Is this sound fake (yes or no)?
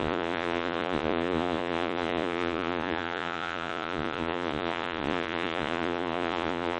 yes